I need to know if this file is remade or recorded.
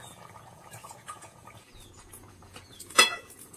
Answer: remade